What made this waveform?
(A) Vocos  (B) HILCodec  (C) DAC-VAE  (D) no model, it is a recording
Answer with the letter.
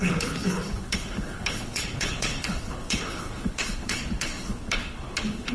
B